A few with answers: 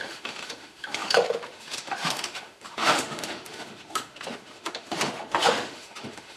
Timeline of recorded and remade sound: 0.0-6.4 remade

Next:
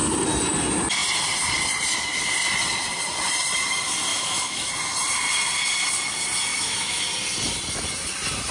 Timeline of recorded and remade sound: 0.0-4.1 recorded; 4.1-4.7 remade; 4.7-6.5 recorded; 6.5-7.0 remade; 7.0-8.5 recorded

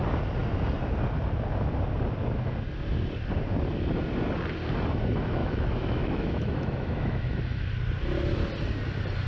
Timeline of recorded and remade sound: 0.0-5.4 recorded; 5.4-7.7 remade; 7.7-9.3 recorded

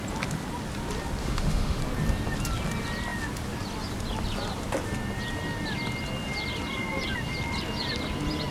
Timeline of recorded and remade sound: 0.0-1.2 recorded; 1.2-1.8 remade; 1.8-8.5 recorded

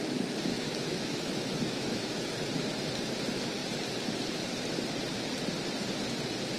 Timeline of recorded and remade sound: 0.0-0.5 recorded; 0.5-2.5 remade; 2.5-6.6 recorded

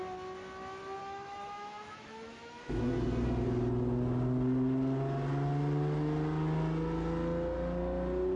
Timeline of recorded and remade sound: 0.0-1.0 recorded; 1.0-2.8 remade; 2.8-8.4 recorded